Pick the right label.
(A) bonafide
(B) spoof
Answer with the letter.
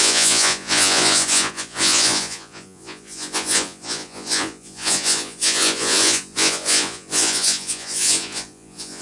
B